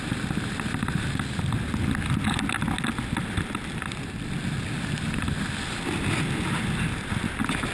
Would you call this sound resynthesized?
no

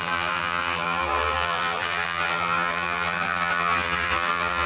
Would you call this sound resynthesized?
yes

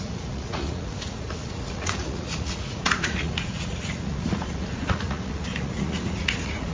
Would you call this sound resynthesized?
yes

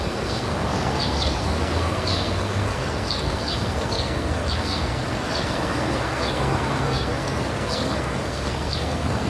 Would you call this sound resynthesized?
yes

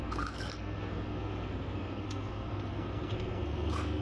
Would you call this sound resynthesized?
yes